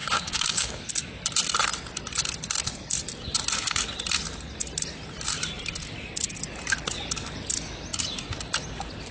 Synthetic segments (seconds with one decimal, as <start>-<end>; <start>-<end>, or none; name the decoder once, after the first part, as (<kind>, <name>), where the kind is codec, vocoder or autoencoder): 0.0-0.8 (codec, DAC)

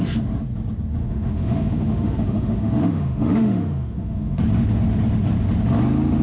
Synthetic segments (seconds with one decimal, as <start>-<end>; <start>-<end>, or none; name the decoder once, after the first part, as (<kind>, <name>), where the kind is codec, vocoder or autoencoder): 1.0-4.4 (autoencoder, DAC-VAE)